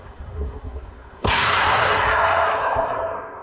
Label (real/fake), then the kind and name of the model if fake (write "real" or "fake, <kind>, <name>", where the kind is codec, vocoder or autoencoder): fake, codec, SNAC